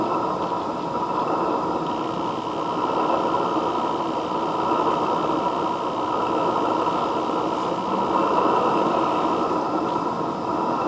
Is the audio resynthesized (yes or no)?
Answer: no